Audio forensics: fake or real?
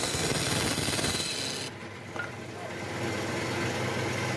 real